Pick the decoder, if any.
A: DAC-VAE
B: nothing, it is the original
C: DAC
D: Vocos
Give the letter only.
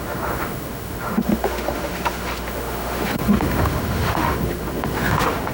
A